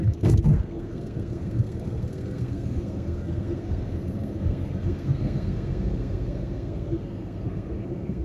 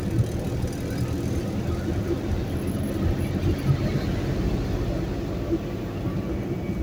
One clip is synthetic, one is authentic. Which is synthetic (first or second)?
first